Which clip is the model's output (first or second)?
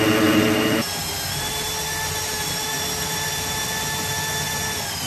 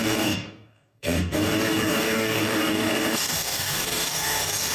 second